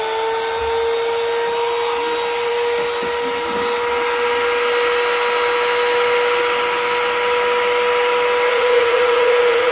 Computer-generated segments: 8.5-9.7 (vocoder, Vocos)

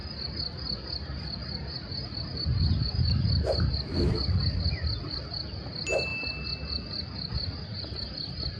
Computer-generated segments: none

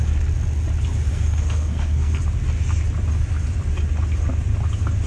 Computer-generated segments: 1.1-2.2 (codec, SNAC)